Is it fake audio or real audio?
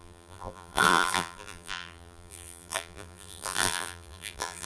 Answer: fake